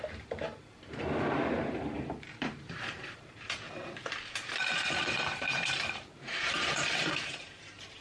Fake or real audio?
fake